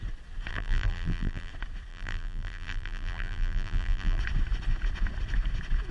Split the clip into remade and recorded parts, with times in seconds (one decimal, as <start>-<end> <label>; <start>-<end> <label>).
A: 0.0-0.5 recorded; 0.5-1.5 remade; 1.5-1.9 recorded; 1.9-4.2 remade; 4.2-5.9 recorded